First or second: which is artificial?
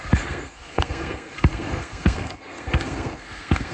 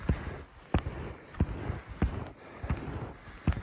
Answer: first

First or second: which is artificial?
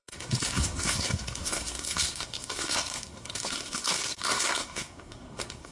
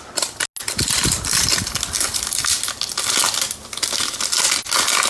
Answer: first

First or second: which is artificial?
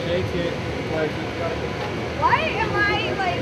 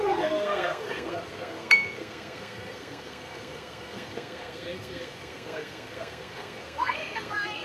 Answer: second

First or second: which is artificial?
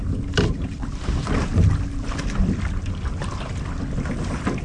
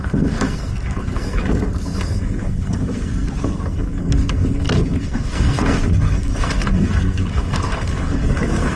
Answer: second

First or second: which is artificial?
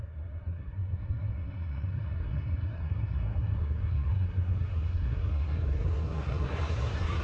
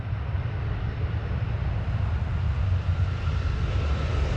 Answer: first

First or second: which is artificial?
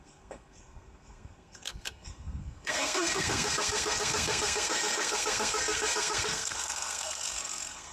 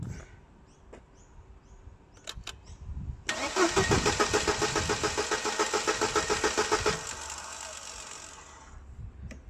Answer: first